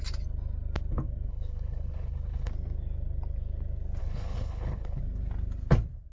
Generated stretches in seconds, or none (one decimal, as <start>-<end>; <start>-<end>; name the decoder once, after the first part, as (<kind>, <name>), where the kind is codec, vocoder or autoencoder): 1.3-2.5 (codec, HILCodec); 4.0-5.0

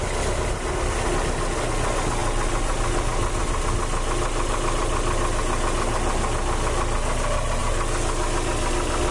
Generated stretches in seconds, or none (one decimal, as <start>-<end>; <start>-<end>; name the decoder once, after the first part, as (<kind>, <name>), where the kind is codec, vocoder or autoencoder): none

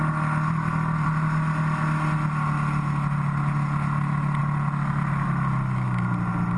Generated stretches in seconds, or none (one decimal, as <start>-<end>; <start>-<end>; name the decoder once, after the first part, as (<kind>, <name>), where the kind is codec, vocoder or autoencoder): none

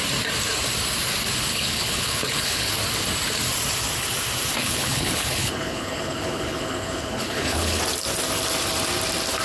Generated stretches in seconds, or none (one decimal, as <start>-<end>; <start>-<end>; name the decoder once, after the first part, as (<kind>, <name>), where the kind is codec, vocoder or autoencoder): 1.5-2.7 (codec, HILCodec); 4.6-7.8

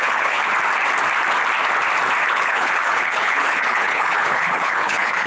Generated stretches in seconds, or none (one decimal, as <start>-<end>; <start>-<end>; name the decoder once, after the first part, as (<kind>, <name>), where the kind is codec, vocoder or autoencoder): 0.0-0.5 (codec, HILCodec); 2.3-5.3